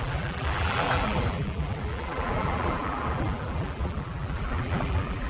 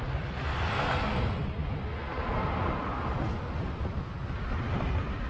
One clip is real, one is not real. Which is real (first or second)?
second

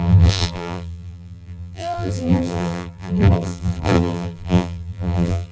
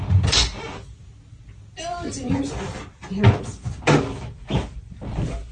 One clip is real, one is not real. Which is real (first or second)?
second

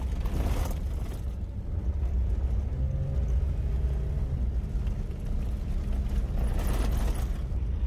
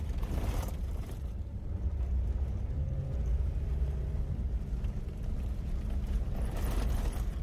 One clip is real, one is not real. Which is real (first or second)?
first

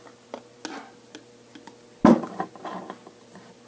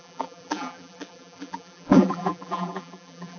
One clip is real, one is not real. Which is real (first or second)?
first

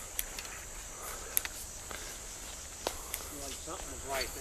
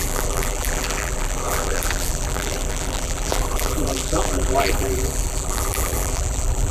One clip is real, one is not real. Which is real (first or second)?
first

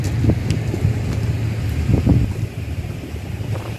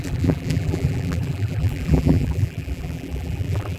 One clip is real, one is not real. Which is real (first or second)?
first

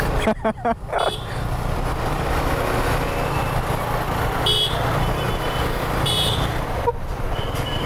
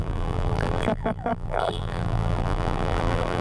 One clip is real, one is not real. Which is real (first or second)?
first